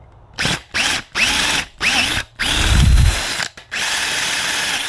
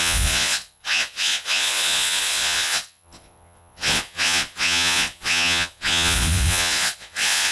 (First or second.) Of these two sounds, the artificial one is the second